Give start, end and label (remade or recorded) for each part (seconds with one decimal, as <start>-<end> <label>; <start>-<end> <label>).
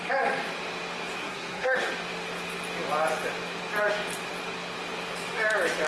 0.0-1.2 recorded; 1.2-1.9 remade; 1.9-5.9 recorded